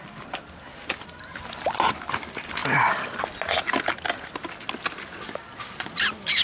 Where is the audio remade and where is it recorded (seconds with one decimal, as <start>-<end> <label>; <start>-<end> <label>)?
0.0-2.6 remade; 2.6-4.7 recorded; 4.7-6.4 remade